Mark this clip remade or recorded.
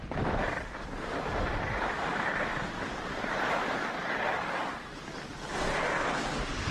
recorded